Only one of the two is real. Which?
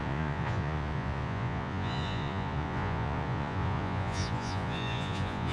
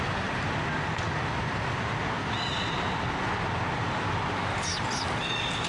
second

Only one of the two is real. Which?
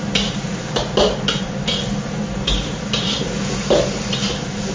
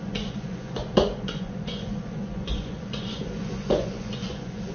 first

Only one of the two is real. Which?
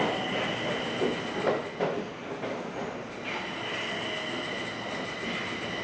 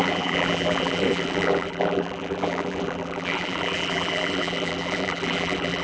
first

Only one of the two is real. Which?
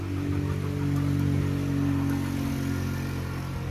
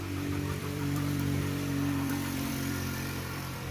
first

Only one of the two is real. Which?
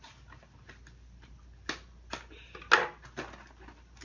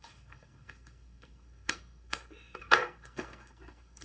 first